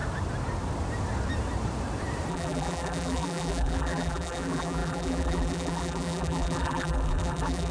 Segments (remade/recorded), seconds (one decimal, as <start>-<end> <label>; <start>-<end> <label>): 0.0-2.3 recorded; 2.3-7.7 remade